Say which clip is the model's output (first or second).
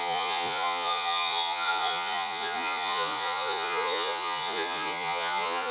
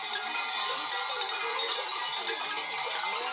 first